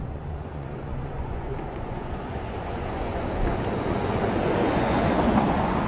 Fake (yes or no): yes